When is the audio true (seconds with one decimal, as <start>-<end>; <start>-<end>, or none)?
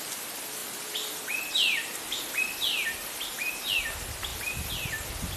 0.0-5.4